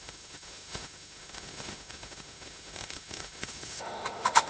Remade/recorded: remade